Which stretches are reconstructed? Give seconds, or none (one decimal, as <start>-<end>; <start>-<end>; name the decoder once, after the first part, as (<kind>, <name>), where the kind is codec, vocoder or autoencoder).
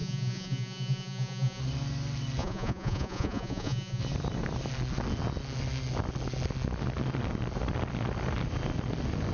0.0-1.6 (vocoder, Vocos); 2.4-4.0